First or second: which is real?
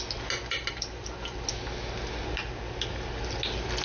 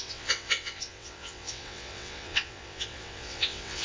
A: first